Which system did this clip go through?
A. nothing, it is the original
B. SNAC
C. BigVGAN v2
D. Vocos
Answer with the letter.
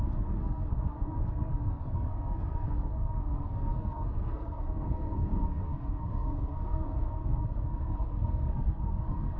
B